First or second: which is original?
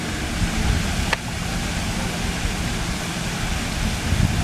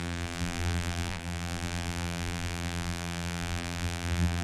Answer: first